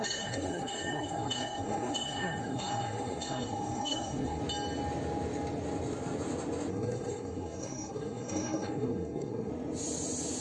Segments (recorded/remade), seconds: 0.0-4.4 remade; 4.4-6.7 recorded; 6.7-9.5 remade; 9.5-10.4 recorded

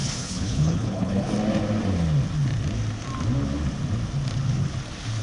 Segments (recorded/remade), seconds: 0.0-1.3 remade; 1.3-5.2 recorded

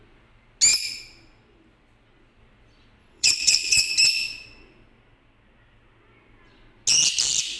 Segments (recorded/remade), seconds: 0.0-3.0 recorded; 3.0-3.9 remade; 3.9-7.6 recorded